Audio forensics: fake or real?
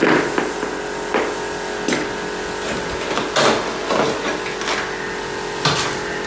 real